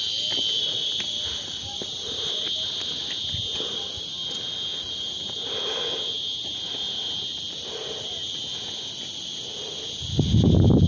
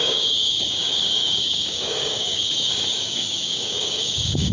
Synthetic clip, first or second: second